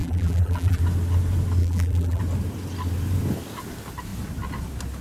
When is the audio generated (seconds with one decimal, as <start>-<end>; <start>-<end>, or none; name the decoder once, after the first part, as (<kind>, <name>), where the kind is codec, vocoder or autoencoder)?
0.0-0.8 (vocoder, BigVGAN v2); 1.6-2.2